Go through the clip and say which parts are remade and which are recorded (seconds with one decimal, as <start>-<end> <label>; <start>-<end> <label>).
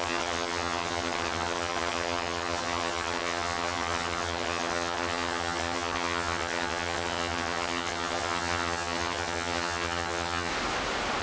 0.0-10.5 remade; 10.5-11.2 recorded